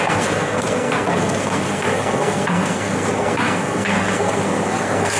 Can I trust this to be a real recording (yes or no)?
no